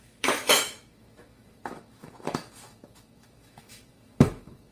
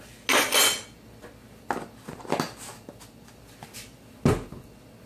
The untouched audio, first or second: second